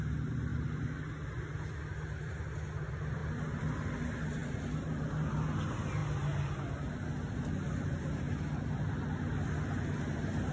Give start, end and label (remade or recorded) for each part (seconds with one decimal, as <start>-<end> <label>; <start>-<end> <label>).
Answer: 0.0-10.5 recorded